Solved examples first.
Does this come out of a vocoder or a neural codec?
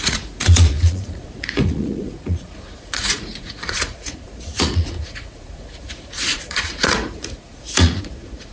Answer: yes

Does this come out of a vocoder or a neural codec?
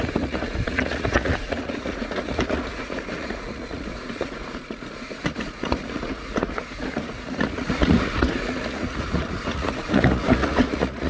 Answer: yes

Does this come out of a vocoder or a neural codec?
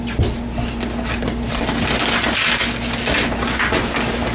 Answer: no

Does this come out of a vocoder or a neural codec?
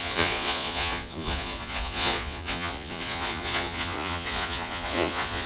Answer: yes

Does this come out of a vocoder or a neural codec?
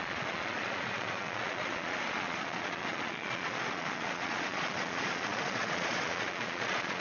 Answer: yes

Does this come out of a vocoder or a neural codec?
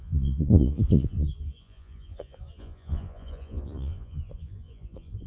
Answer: yes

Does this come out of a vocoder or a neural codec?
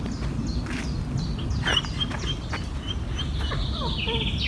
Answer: no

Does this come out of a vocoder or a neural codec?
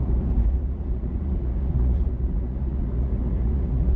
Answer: yes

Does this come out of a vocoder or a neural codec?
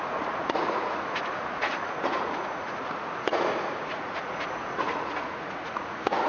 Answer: yes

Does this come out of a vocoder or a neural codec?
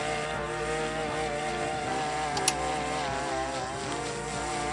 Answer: no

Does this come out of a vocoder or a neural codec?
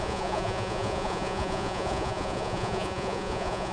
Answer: yes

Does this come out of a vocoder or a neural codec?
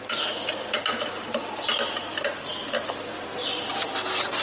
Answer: no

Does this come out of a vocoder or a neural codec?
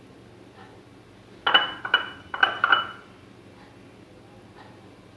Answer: no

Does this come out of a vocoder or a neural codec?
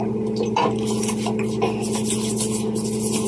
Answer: no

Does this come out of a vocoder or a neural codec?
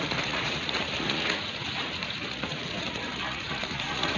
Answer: yes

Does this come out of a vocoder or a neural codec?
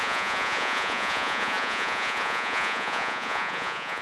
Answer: yes